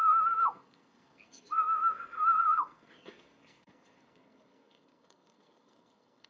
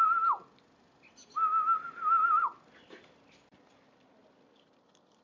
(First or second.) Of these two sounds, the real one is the second